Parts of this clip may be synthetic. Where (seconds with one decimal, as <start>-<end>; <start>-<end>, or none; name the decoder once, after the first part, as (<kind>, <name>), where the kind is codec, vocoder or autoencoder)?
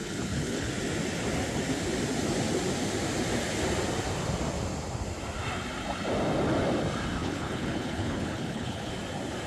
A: 0.0-0.7 (codec, HILCodec); 7.2-8.9